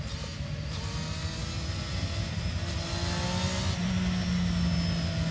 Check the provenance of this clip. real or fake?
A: real